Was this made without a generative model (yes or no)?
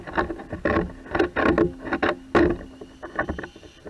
yes